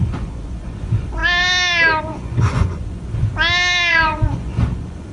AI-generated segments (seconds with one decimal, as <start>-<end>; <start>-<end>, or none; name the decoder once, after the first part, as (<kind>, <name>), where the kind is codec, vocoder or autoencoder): 0.0-1.2 (vocoder, Vocos); 2.0-3.3; 3.9-5.1